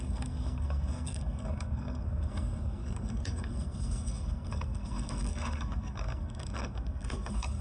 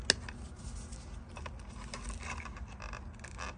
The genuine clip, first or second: second